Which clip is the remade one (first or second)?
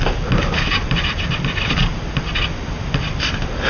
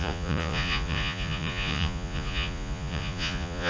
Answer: second